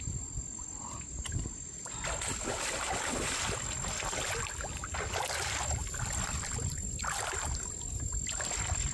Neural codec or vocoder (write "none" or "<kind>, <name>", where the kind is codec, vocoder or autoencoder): none